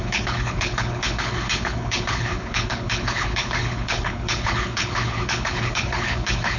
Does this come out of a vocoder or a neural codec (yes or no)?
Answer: yes